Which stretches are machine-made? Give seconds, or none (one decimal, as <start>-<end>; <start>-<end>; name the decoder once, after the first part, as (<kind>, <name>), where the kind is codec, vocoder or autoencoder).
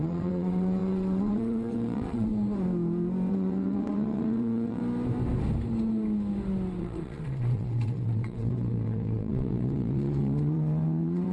0.0-2.3 (vocoder, WaveNeXt); 3.3-4.8; 6.8-11.3